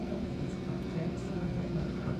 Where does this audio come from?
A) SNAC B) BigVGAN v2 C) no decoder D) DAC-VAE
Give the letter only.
A